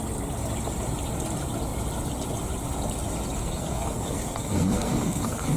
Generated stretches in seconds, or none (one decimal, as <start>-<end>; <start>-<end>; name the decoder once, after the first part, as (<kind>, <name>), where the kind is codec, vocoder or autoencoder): 3.4-5.6 (codec, SNAC)